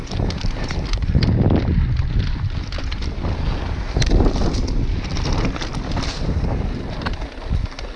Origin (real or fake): real